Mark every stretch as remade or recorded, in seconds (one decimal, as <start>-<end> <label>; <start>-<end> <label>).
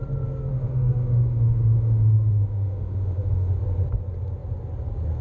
0.0-0.5 recorded; 0.5-3.6 remade; 3.6-5.2 recorded